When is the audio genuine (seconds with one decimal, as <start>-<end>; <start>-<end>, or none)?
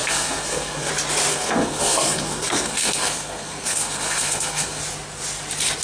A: 0.9-1.3; 4.8-5.8